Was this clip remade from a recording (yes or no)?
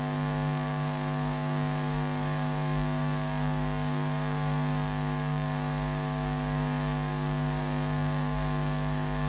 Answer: yes